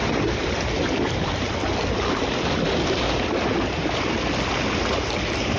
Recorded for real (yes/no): yes